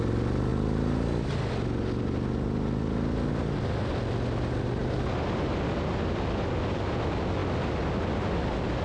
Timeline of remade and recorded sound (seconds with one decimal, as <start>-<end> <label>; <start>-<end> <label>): 0.0-8.8 recorded